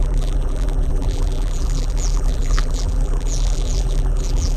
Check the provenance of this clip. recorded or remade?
remade